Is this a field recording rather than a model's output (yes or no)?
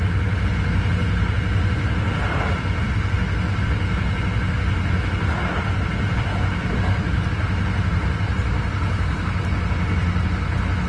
yes